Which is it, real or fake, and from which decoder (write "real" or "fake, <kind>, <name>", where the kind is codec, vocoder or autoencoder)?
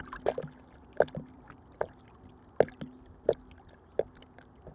real